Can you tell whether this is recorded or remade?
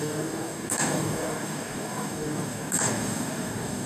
remade